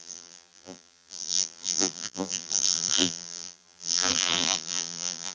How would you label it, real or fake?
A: fake